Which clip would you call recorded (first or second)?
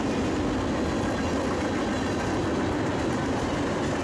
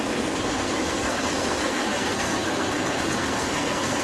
first